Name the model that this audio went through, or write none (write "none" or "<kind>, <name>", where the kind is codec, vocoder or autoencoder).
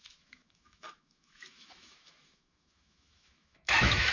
autoencoder, DAC-VAE